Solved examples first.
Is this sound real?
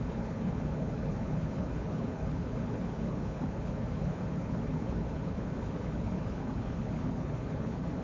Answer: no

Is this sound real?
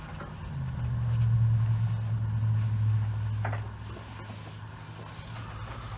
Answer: yes